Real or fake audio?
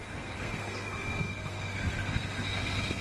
fake